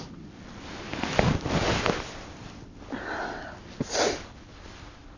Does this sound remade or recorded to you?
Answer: remade